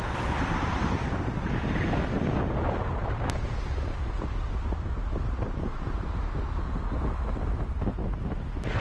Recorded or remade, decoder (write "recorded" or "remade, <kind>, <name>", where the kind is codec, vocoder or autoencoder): recorded